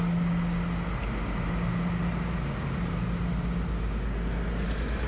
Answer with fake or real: real